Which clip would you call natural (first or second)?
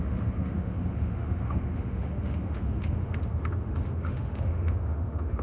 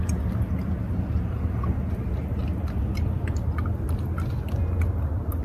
second